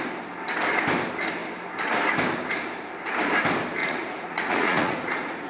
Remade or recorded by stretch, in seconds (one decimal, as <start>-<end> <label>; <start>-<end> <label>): 0.0-3.8 recorded; 3.8-5.5 remade